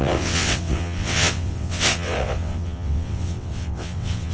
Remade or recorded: remade